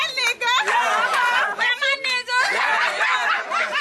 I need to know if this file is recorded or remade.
recorded